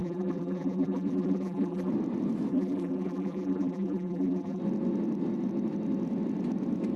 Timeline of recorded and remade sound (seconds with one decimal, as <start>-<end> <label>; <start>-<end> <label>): 0.0-1.9 remade; 1.9-2.5 recorded; 2.5-4.6 remade; 4.6-7.0 recorded